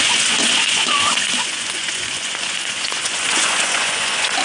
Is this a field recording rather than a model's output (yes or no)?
no